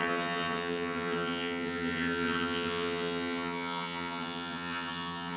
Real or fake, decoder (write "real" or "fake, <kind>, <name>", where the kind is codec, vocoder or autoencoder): fake, vocoder, HiFi-GAN